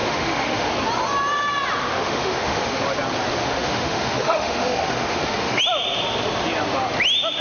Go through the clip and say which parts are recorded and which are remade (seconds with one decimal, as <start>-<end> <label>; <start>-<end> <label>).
0.0-0.7 remade; 0.7-1.8 recorded; 1.8-2.8 remade; 2.8-3.4 recorded; 3.4-5.6 remade; 5.6-7.4 recorded